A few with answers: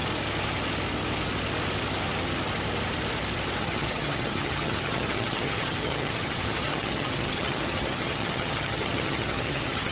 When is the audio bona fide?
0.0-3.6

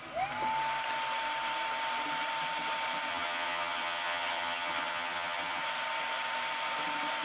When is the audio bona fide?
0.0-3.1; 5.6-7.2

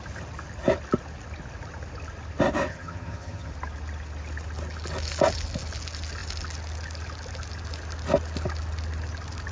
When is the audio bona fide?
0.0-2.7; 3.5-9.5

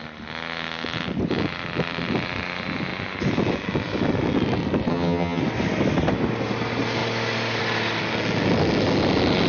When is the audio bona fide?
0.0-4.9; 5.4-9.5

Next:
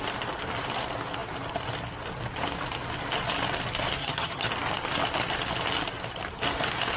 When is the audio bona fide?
0.0-4.0; 4.5-7.0